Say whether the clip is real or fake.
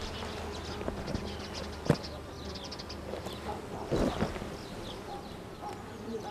real